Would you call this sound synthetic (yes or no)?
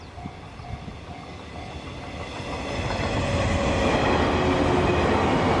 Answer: no